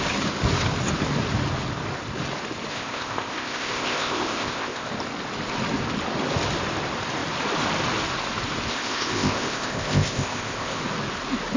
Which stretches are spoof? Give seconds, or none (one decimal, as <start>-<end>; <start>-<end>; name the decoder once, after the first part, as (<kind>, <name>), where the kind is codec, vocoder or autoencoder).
2.7-4.9 (codec, ZipCodec); 8.7-10.8